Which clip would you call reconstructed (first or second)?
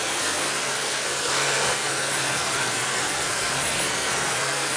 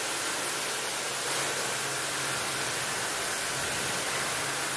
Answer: first